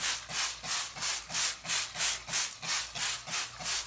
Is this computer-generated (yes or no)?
no